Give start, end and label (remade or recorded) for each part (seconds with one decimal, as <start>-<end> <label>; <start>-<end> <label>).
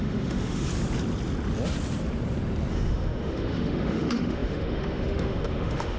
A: 0.0-0.7 remade; 0.7-2.7 recorded; 2.7-6.0 remade